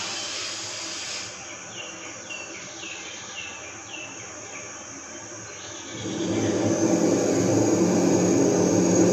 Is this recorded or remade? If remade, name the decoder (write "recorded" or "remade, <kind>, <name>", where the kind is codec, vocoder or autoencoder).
recorded